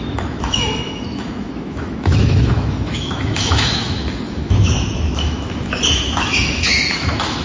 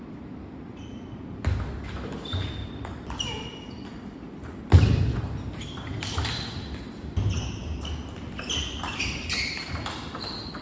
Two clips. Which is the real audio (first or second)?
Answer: second